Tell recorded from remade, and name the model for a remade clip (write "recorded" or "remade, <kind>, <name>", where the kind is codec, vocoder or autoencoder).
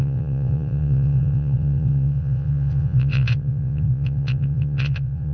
remade, vocoder, WaveNeXt